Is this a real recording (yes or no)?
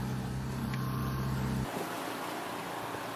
yes